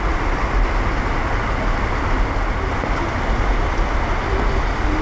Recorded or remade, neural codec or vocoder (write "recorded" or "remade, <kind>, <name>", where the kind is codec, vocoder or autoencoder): recorded